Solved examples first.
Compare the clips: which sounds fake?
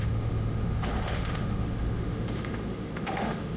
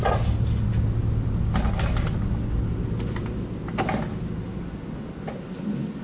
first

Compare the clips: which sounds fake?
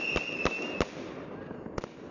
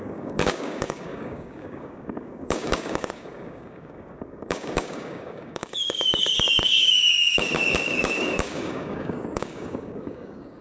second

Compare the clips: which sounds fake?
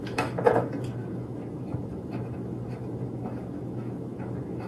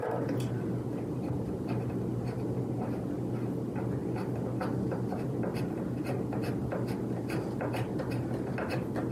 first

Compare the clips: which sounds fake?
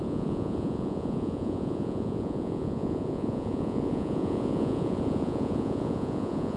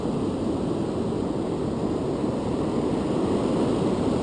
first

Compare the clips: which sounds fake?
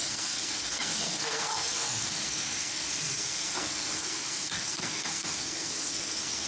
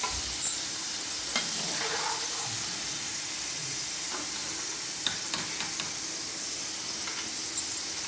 first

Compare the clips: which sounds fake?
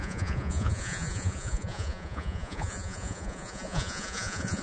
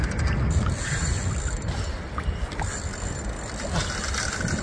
first